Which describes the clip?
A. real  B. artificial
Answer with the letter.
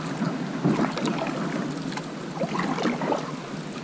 A